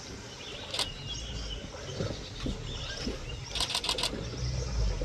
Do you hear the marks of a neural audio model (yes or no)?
no